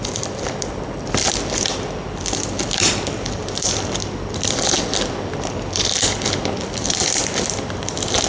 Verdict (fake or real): fake